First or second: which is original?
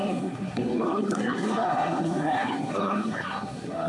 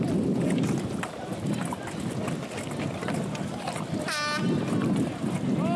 second